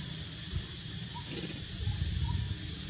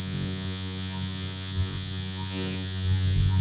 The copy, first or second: second